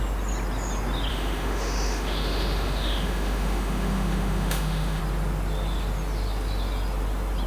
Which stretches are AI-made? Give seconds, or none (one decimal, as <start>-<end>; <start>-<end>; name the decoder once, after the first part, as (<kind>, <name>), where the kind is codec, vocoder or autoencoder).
1.1-5.0 (autoencoder, DAC-VAE)

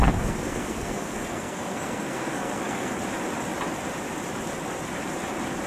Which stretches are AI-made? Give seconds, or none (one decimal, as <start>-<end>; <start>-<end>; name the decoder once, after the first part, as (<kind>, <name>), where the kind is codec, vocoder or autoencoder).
0.0-2.9 (codec, SNAC)

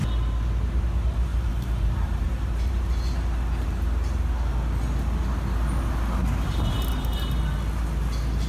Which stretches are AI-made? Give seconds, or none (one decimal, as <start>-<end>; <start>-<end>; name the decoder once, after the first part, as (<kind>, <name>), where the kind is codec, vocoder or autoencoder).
1.3-2.7 (vocoder, BigVGAN v2)

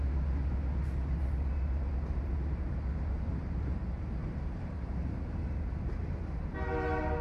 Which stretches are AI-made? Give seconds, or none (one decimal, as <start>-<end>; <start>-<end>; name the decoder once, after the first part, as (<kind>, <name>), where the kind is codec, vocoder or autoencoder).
4.2-5.6 (vocoder, BigVGAN v2)

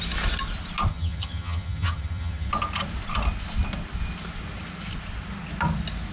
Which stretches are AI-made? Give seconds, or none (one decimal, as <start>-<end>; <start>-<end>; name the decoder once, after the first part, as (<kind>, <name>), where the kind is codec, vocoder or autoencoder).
0.9-2.5 (vocoder, HiFi-GAN)

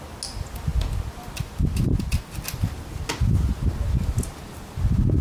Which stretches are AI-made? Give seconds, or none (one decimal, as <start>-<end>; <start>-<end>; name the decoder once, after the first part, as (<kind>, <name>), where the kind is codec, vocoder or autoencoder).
none